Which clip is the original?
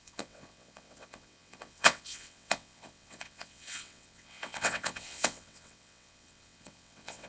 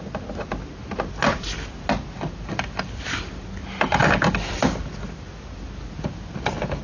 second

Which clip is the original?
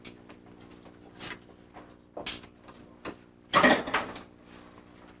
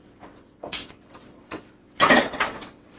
first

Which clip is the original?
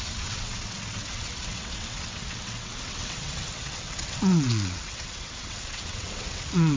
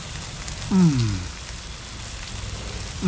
second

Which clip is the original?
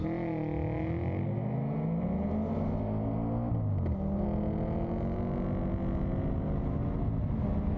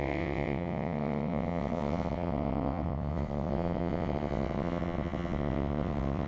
first